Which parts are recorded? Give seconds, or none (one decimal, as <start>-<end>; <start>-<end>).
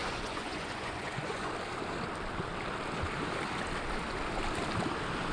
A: 1.5-5.3